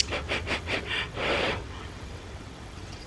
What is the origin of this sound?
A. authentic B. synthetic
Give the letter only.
B